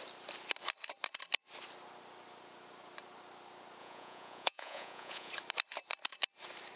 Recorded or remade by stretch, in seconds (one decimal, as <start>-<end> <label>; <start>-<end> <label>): 0.0-3.8 recorded; 3.8-5.3 remade; 5.3-6.8 recorded